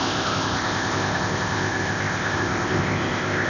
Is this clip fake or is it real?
fake